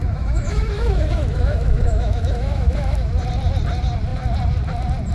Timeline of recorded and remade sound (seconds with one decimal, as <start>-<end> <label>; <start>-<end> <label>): 0.0-3.1 remade; 3.1-5.1 recorded